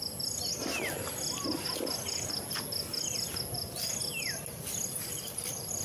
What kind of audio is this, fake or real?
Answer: real